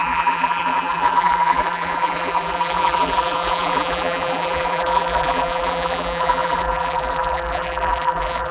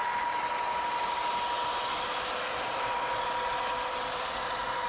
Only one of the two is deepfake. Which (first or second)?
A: first